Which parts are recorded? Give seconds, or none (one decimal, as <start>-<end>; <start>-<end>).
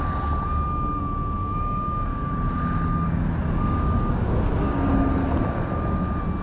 0.0-1.4; 2.3-3.4; 4.9-6.4